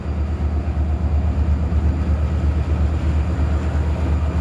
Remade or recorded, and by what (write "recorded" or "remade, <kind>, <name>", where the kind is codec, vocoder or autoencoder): recorded